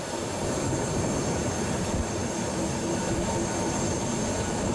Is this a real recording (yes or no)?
no